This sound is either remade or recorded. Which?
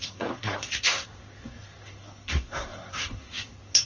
remade